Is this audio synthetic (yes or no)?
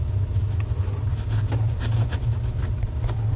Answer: no